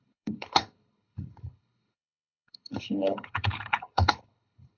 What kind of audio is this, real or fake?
fake